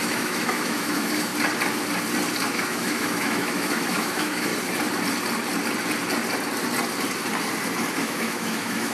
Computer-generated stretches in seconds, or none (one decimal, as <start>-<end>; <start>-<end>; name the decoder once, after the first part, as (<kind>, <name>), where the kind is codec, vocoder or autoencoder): 0.0-1.3 (autoencoder, DAC-VAE); 2.5-4.5; 7.9-8.9